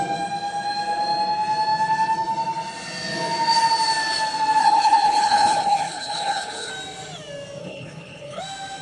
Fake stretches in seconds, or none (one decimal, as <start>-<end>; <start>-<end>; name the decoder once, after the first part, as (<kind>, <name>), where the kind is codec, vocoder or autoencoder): 4.6-6.7 (codec, HILCodec); 7.6-8.4